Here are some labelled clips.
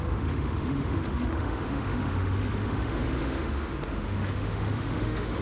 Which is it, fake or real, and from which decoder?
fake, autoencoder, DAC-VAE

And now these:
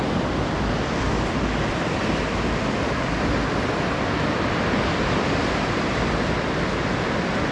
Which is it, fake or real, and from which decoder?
real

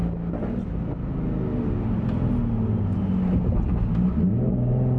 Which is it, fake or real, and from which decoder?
real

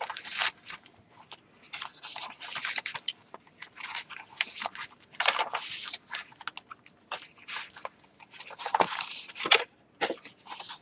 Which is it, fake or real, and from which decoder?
real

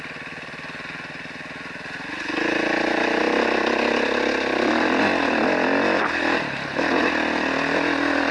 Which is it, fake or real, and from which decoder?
real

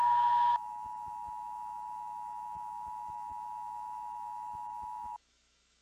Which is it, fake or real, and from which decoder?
fake, autoencoder, DAC-VAE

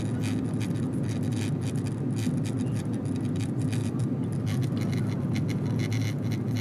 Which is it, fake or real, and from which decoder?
real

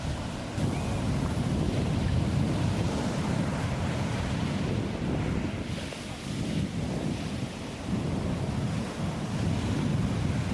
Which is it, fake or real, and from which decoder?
real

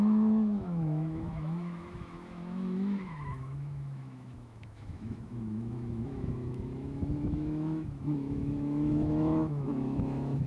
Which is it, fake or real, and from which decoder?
fake, autoencoder, DAC-VAE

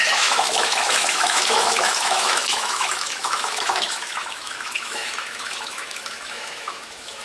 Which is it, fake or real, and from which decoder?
fake, autoencoder, DAC-VAE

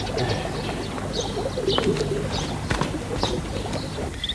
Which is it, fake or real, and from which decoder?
real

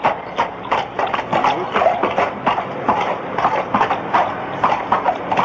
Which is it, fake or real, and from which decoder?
real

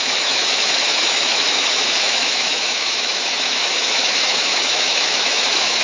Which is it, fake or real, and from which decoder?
fake, autoencoder, DAC-VAE